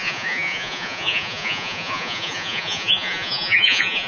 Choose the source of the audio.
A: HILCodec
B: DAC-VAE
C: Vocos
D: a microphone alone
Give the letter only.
C